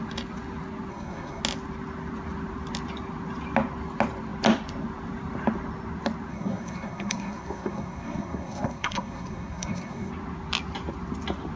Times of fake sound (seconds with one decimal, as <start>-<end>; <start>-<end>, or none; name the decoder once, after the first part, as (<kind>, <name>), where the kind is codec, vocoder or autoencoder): 0.9-1.4 (codec, SNAC); 6.3-10.1